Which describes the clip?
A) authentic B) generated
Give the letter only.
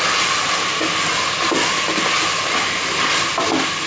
A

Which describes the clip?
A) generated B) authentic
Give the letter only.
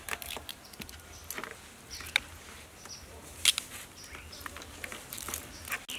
B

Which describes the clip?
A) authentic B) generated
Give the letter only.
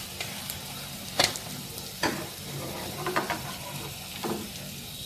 B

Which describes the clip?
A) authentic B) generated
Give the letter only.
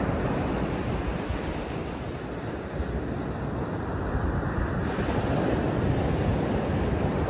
A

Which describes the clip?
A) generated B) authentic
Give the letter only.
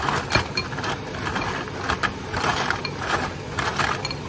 B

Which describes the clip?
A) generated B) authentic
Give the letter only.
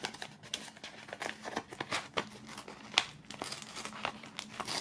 B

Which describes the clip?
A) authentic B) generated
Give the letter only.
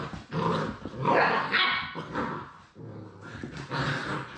A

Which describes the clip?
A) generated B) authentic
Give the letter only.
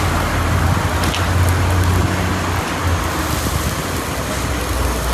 B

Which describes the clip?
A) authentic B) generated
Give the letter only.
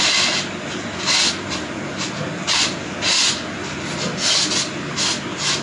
A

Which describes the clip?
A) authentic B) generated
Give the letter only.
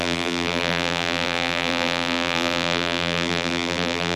B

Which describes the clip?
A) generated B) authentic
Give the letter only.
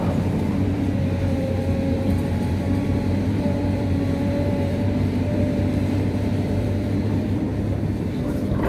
A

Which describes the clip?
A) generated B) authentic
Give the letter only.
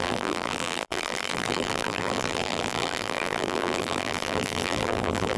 A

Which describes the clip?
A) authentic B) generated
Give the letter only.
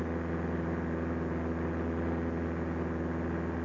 A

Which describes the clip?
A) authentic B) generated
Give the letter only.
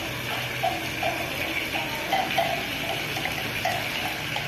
A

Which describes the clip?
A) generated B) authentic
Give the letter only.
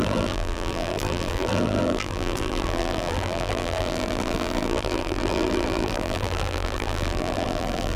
A